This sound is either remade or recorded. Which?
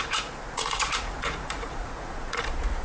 remade